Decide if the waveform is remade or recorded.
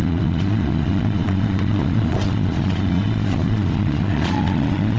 remade